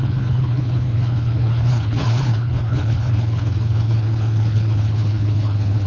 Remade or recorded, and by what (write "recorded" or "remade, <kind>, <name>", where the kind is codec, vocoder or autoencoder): remade, codec, HILCodec